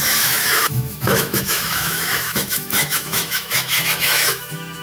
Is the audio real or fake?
fake